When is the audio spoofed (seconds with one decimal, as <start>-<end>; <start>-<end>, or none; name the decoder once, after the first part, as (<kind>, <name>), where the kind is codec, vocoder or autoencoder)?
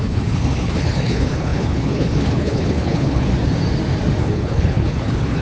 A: 0.0-3.3 (codec, HILCodec); 4.2-5.4